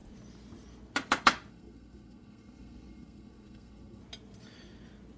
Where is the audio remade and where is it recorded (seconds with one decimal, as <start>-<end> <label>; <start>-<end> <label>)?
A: 0.0-1.5 recorded; 1.5-4.0 remade; 4.0-5.2 recorded